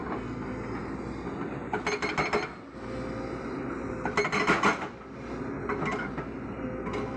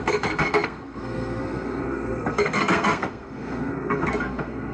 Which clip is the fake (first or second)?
second